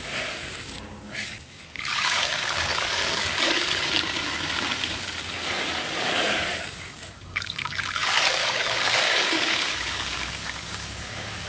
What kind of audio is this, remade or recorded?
remade